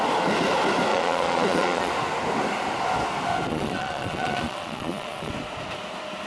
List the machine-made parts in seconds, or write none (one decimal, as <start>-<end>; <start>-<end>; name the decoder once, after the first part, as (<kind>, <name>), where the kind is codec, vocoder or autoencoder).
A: 0.9-1.9 (vocoder, Vocos); 3.5-5.3